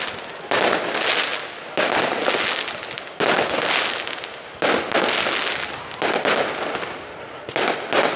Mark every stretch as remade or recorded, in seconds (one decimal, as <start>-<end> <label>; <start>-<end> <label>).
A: 0.0-8.2 recorded